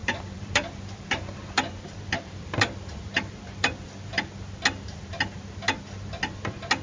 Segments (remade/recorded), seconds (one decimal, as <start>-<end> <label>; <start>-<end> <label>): 0.0-4.1 remade; 4.1-6.8 recorded